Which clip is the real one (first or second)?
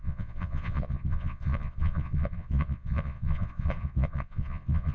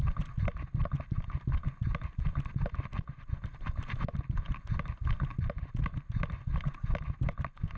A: second